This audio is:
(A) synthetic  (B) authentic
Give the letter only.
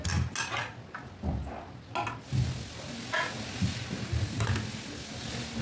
B